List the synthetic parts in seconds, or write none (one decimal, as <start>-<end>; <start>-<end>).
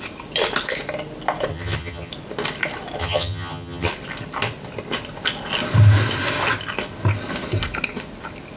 1.5-2.1; 3.0-3.9